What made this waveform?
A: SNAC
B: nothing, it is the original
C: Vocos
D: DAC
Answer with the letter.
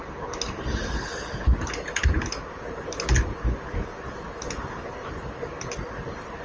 B